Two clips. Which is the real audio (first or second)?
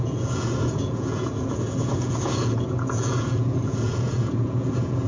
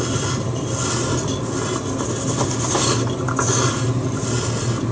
second